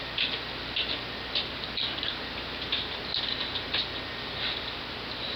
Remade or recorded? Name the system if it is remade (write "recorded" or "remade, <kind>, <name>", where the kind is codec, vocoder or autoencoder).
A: recorded